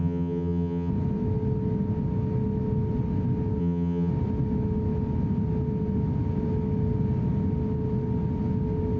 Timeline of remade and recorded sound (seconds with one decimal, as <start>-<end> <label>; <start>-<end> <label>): 0.0-0.9 remade; 0.9-3.6 recorded; 3.6-4.1 remade; 4.1-9.0 recorded